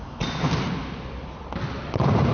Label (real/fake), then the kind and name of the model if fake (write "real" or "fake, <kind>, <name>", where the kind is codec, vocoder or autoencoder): real